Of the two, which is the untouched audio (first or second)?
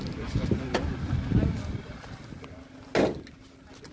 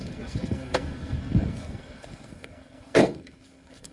first